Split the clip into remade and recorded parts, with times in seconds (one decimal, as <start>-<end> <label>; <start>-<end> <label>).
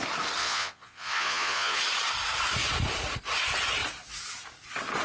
0.0-0.4 recorded; 0.4-1.8 remade; 1.8-5.0 recorded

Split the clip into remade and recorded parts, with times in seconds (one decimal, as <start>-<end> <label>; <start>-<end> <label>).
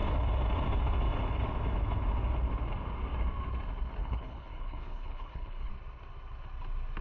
0.0-4.0 recorded; 4.0-5.7 remade; 5.7-7.0 recorded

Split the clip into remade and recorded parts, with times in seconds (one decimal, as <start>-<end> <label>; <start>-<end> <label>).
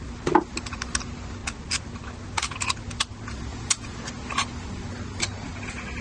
0.0-3.5 recorded; 3.5-4.1 remade; 4.1-6.0 recorded